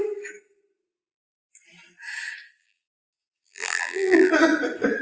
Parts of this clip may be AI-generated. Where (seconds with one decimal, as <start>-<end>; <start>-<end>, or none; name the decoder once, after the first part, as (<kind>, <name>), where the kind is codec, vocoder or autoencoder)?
2.6-4.3 (vocoder, BigVGAN v2)